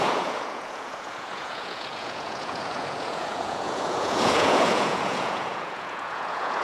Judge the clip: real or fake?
fake